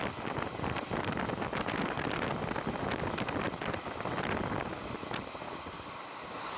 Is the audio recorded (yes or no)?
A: yes